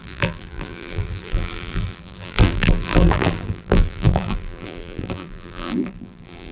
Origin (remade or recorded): remade